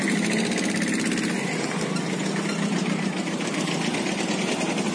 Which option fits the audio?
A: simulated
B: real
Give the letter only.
B